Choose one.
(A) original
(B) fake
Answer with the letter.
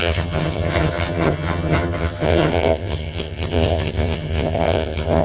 B